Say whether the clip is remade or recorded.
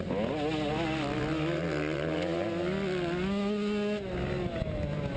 recorded